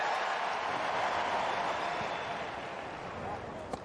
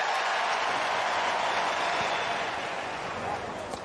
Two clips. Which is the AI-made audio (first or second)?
second